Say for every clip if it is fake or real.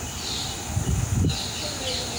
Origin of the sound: real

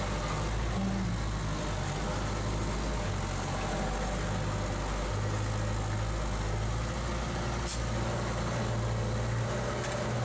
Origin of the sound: real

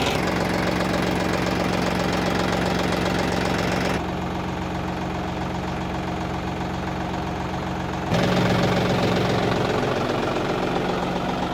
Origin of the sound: real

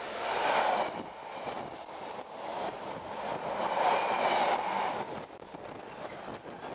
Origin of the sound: real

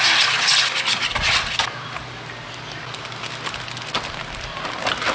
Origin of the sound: real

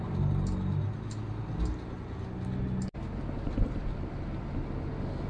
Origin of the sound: real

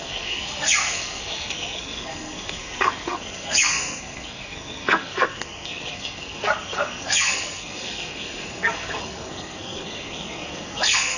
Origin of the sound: fake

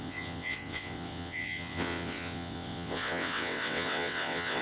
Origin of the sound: fake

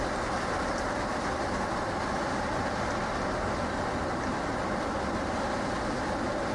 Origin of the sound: real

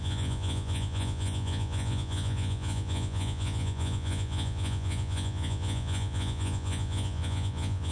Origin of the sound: fake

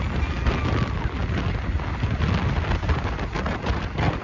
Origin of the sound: real